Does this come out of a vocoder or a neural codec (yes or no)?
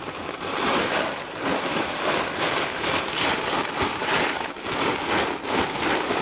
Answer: no